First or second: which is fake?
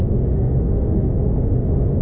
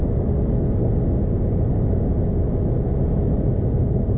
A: first